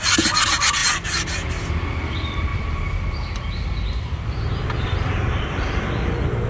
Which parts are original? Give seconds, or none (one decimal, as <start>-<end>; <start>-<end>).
0.0-0.8; 1.3-2.5; 5.8-6.5